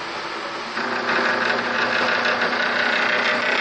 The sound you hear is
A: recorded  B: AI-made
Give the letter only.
A